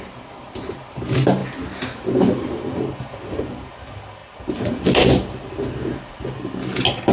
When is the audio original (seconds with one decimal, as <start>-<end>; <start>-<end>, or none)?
0.0-7.1